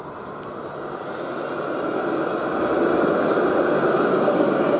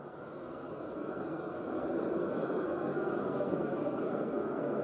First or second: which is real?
first